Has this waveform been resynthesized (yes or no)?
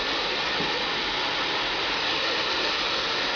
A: no